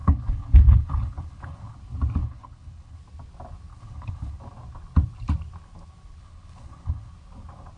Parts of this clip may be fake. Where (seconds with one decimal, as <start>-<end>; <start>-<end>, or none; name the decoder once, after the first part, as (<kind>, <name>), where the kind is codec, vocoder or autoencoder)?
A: 0.0-1.8 (codec, HILCodec); 2.2-3.0; 3.7-4.4; 6.2-7.1